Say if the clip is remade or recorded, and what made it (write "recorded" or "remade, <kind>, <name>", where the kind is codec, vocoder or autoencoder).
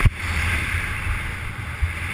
recorded